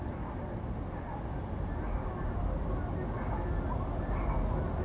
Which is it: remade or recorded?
recorded